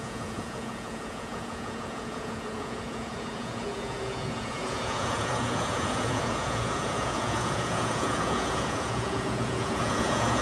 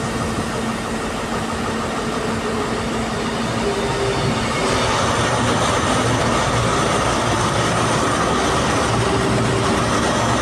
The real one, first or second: second